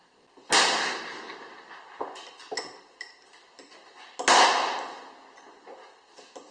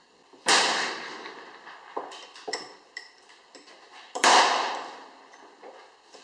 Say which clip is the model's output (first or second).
second